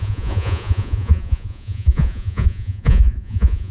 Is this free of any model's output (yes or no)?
no